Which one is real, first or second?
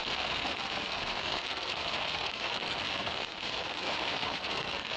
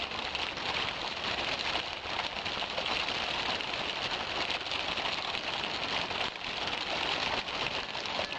second